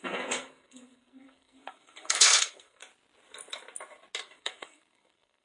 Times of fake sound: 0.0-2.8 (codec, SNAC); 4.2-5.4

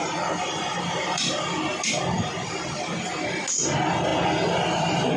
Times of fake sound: none

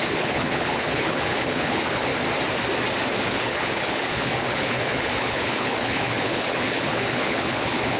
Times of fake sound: 0.0-2.1 (codec, HILCodec); 3.2-8.0